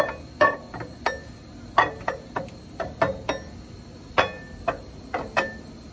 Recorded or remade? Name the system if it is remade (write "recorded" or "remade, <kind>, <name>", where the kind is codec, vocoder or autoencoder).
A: recorded